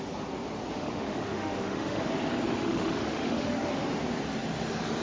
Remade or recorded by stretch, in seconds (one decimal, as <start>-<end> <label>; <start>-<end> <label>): 0.0-0.7 recorded; 0.7-2.0 remade; 2.0-2.6 recorded; 2.6-3.7 remade; 3.7-5.0 recorded